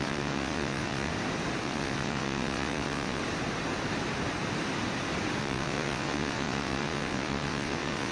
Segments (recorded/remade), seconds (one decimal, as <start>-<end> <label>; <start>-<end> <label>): 0.0-1.1 remade; 1.1-1.6 recorded; 1.6-3.2 remade; 3.2-5.4 recorded; 5.4-8.1 remade